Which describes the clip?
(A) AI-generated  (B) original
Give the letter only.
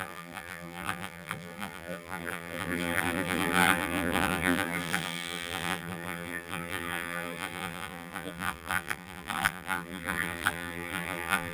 A